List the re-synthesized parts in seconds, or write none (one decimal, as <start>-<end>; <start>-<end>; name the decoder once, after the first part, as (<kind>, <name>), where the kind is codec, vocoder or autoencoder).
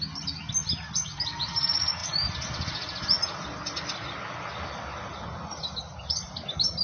none